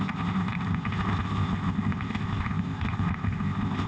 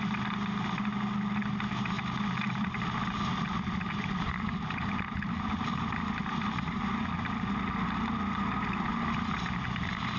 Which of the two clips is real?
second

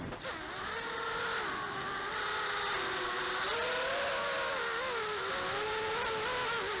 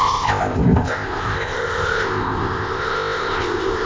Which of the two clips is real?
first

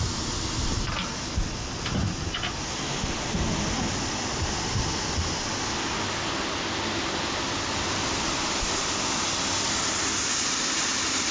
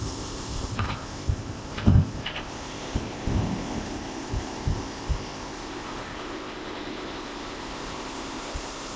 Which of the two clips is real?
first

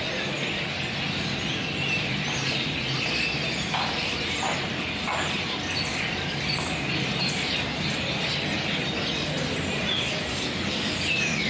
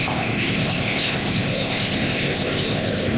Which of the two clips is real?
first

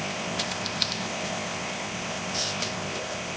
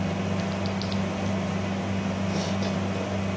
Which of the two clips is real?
second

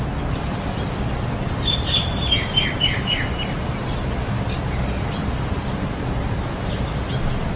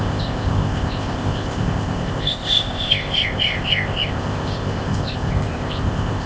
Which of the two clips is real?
first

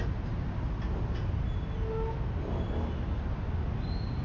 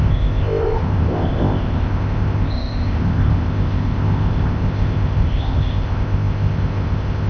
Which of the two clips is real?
first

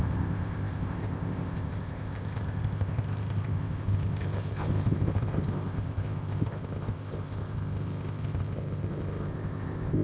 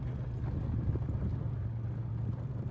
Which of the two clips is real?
second